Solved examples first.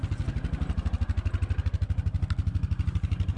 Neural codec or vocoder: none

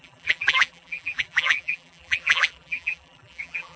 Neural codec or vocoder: vocoder, BigVGAN v2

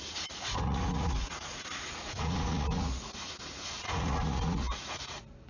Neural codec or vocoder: vocoder, Vocos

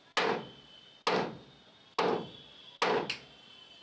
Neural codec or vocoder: none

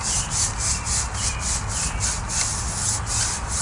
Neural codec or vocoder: none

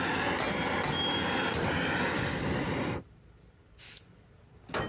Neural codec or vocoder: none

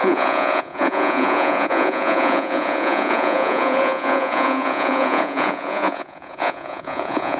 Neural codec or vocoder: vocoder, Vocos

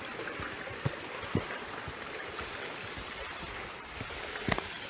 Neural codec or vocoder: none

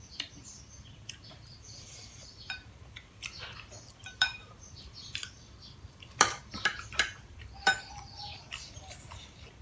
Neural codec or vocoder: vocoder, BigVGAN v2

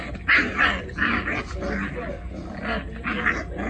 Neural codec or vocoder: none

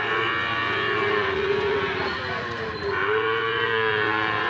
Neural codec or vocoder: vocoder, Vocos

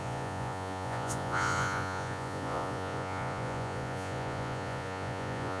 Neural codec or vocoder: vocoder, Vocos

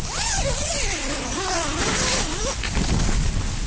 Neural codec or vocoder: none